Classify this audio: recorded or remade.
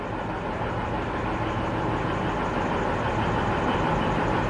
recorded